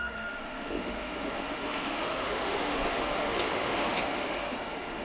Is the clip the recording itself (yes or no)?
no